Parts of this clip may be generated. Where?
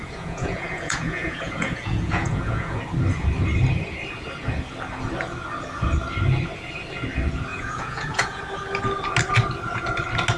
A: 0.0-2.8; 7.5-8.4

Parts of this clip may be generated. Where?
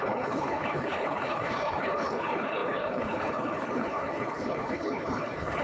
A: 0.0-5.6